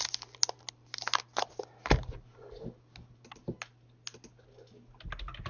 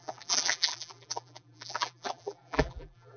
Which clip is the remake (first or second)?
second